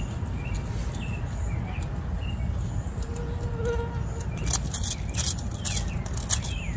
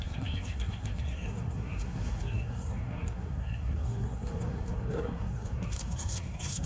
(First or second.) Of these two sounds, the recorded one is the first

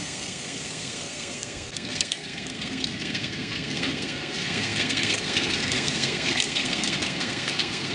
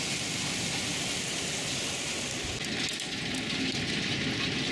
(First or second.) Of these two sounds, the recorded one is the second